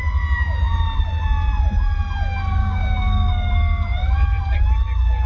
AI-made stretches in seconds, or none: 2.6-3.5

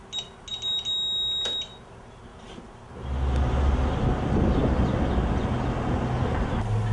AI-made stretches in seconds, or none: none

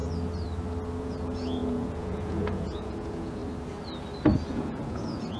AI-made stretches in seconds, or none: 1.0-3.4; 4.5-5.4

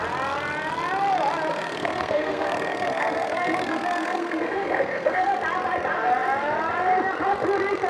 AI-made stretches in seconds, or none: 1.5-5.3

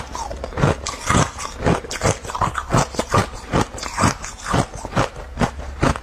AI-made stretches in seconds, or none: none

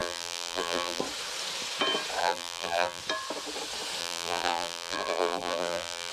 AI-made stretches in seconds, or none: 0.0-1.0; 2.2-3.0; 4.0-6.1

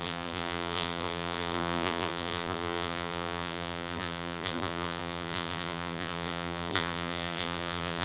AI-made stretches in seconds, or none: 0.0-8.0

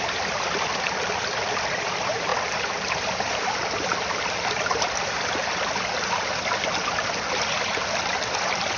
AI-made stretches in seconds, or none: none